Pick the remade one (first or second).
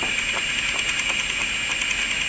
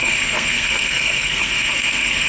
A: second